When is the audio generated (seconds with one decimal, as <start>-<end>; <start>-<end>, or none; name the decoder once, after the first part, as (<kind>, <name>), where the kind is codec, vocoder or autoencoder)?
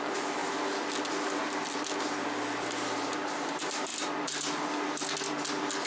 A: 0.0-0.4 (vocoder, BigVGAN v2); 3.1-3.9